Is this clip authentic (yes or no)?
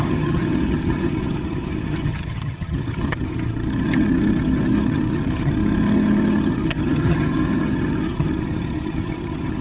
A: no